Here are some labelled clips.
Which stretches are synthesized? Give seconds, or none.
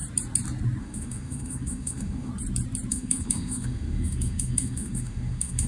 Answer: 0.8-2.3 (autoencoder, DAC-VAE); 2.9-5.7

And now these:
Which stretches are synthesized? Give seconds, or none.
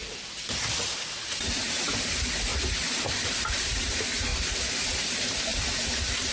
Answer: none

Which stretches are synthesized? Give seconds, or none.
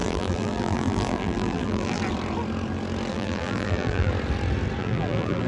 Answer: 0.0-2.0 (vocoder, BigVGAN v2); 3.1-4.1; 4.8-5.5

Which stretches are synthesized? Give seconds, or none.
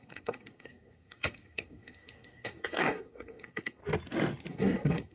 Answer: 0.0-3.8 (codec, SNAC); 4.5-5.1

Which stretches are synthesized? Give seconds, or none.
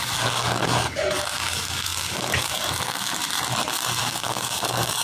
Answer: 0.0-3.2 (codec, DAC); 4.0-5.0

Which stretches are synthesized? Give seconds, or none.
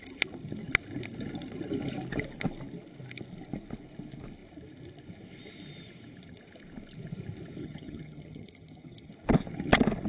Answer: 7.6-9.1 (vocoder, HiFi-GAN)